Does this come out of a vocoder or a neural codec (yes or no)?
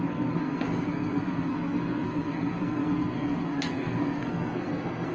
yes